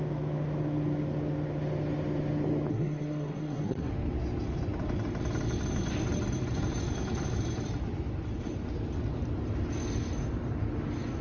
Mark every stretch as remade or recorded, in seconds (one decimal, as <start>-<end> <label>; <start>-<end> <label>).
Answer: 0.0-2.7 recorded; 2.7-3.9 remade; 3.9-11.2 recorded